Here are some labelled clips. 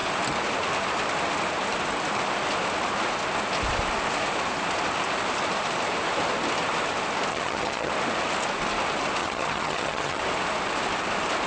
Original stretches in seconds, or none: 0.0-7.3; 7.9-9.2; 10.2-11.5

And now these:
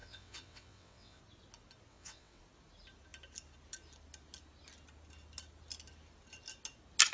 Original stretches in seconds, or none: 1.2-1.9; 2.4-7.1

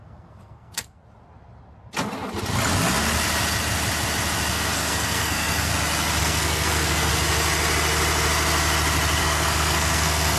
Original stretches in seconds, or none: 1.0-4.5; 5.7-6.2; 7.1-9.2

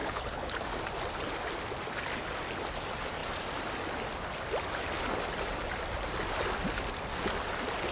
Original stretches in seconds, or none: 0.6-7.9

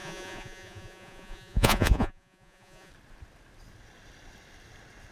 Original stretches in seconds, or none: 2.9-5.1